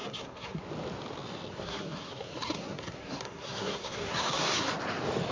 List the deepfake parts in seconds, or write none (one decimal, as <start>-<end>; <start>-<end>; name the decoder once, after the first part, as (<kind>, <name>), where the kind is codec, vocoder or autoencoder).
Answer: 0.0-0.6 (codec, SNAC); 1.5-4.7